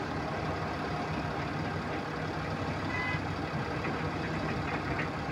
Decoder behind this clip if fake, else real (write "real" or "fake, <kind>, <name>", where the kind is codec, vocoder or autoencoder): real